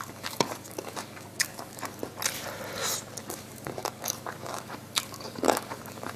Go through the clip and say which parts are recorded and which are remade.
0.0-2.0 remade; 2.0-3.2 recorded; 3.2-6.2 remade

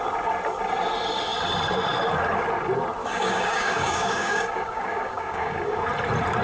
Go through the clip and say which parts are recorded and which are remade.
0.0-3.1 recorded; 3.1-5.8 remade; 5.8-6.4 recorded

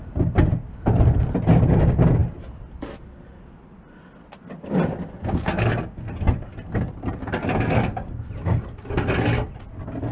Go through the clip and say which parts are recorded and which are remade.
0.0-5.2 recorded; 5.2-5.7 remade; 5.7-10.1 recorded

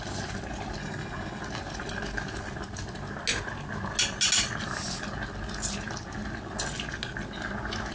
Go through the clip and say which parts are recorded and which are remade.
0.0-0.8 recorded; 0.8-1.4 remade; 1.4-7.9 recorded